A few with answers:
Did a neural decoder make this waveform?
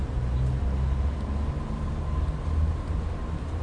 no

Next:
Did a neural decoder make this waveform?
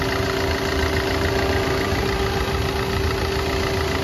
no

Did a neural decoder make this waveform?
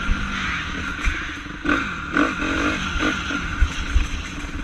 no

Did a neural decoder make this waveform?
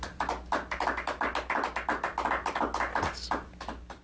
no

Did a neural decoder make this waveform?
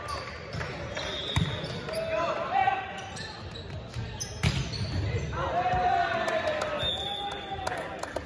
no